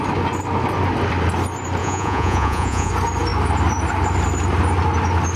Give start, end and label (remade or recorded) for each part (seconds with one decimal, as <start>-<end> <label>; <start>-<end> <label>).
0.0-1.8 recorded; 1.8-2.9 remade; 2.9-5.4 recorded